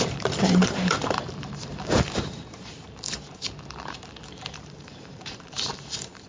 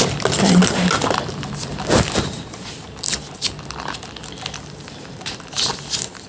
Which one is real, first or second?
second